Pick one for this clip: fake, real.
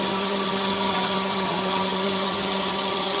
fake